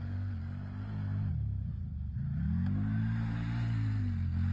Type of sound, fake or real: real